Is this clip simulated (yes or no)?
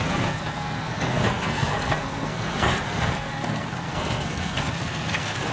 yes